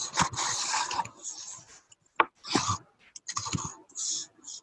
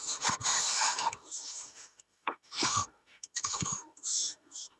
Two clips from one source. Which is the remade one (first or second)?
second